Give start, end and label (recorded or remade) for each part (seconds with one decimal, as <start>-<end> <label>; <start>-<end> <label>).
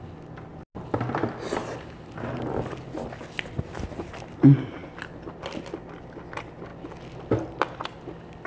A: 0.0-8.5 recorded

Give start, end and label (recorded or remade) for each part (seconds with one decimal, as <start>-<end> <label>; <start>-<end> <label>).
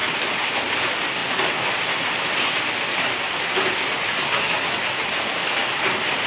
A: 0.0-4.2 recorded; 4.2-4.8 remade; 4.8-6.3 recorded